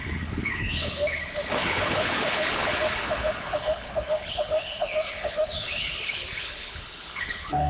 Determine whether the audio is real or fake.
fake